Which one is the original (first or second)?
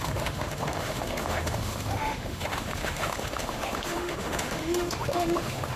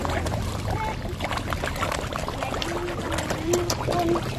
second